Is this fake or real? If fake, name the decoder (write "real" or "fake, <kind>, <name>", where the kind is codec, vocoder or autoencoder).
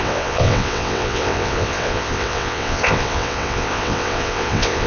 fake, vocoder, WaveNeXt